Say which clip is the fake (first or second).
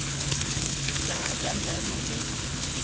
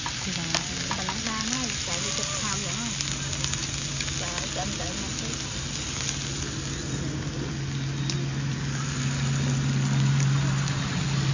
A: first